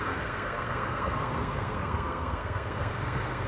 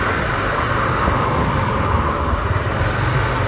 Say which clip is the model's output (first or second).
first